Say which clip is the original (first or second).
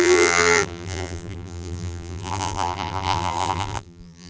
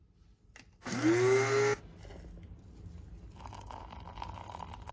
second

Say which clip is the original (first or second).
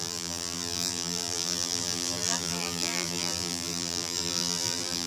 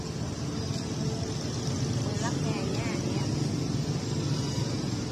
second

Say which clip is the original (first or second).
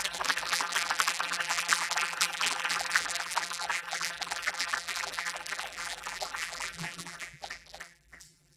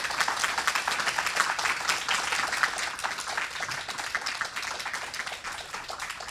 second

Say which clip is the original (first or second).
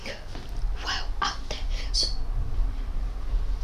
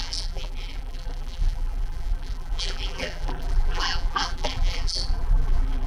first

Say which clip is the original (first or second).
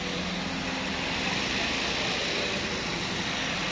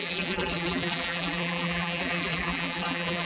first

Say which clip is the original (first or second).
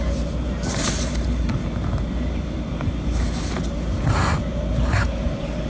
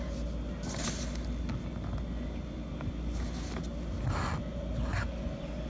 second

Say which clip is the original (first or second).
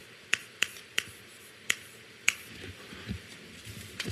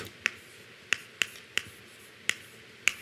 second